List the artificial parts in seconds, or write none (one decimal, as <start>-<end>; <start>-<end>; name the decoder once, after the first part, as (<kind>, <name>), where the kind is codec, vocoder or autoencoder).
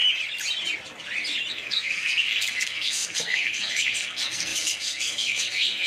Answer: 1.5-5.9 (codec, SNAC)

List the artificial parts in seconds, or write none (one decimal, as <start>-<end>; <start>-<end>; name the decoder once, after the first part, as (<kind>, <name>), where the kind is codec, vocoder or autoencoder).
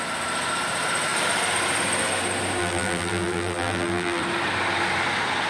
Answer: 2.6-4.2 (vocoder, BigVGAN v2)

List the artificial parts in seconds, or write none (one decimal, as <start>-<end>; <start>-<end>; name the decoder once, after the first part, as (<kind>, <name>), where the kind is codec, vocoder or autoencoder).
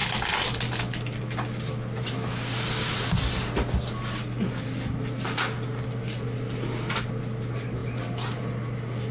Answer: none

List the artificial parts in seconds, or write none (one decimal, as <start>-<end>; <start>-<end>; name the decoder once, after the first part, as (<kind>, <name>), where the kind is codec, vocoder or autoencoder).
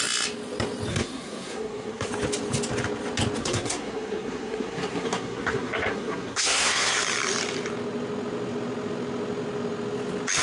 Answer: 0.9-2.1 (codec, SNAC); 3.4-7.0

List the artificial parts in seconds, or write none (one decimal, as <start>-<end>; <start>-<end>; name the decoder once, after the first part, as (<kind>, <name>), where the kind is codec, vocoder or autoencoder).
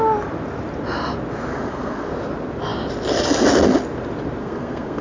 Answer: 1.5-2.1 (codec, SNAC); 4.4-5.0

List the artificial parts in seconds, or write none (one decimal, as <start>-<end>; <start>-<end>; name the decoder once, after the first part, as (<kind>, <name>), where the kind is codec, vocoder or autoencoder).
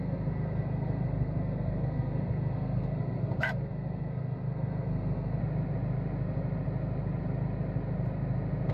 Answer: 0.0-5.4 (codec, SNAC)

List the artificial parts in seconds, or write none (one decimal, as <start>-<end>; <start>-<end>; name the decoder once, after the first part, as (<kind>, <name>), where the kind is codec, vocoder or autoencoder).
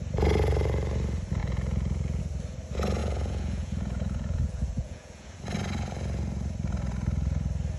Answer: 1.4-2.2 (vocoder, Vocos); 3.0-5.4